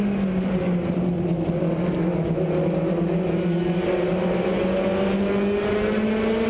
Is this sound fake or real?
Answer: real